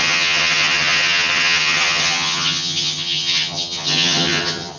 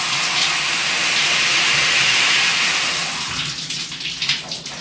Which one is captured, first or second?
second